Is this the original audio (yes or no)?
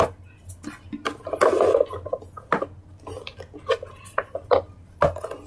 yes